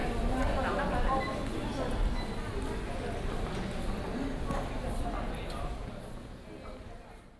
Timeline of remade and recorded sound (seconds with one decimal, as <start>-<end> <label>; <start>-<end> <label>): 0.0-7.4 recorded